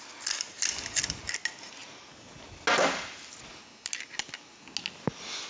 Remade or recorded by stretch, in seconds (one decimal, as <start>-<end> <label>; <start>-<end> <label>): 0.0-5.5 recorded